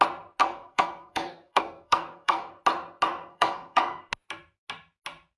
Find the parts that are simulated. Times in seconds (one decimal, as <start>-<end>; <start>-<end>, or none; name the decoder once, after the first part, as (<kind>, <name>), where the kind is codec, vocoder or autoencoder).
0.4-2.5 (codec, SNAC); 3.3-4.0